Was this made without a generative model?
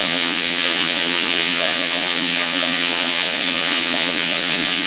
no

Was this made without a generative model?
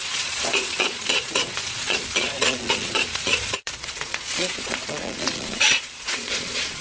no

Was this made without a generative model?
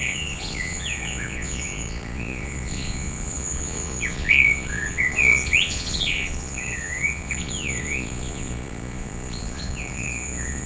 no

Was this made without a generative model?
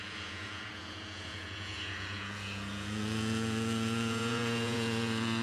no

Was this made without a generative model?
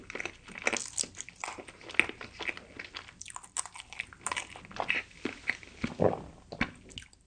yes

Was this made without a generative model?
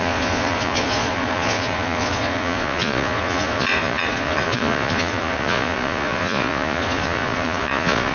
no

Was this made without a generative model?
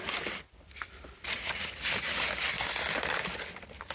yes